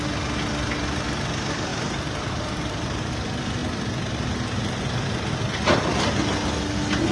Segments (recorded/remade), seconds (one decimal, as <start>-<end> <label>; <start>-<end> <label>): 0.0-1.7 recorded; 1.7-3.1 remade; 3.1-7.1 recorded